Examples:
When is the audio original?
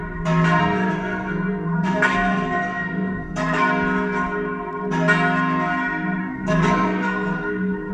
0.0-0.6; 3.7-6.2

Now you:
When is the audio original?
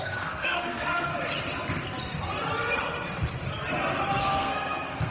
1.1-4.2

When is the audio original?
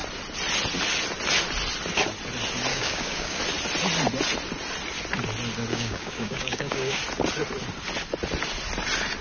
0.0-2.7; 3.4-5.7; 7.0-9.2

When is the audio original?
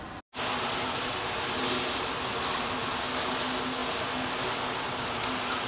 0.0-5.7